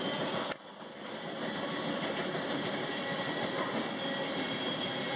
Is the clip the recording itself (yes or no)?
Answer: yes